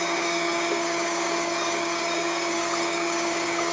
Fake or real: fake